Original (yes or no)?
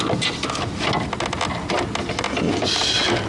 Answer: yes